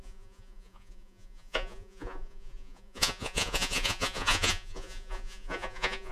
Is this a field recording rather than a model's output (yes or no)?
no